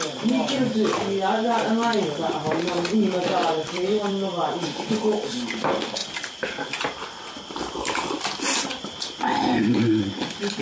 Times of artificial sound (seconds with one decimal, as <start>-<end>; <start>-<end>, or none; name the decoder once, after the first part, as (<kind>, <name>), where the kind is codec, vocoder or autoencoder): 3.4-4.1 (vocoder, BigVGAN v2)